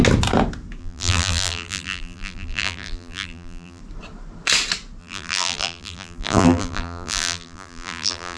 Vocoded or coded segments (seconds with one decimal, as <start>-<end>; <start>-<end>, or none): 0.8-3.8; 5.0-8.4